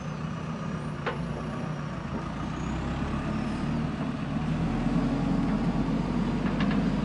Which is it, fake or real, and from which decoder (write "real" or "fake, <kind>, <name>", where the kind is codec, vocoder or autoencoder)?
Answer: real